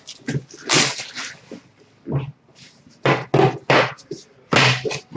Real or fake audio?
real